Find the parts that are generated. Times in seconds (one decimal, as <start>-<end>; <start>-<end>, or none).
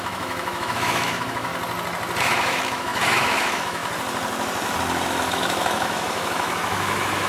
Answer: 0.0-1.5; 2.2-3.8; 5.3-7.3